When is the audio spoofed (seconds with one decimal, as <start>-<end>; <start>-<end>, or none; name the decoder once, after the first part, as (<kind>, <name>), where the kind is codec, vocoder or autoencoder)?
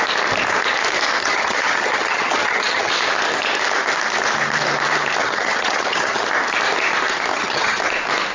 1.2-2.9 (vocoder, HiFi-GAN); 5.2-6.2; 7.3-7.8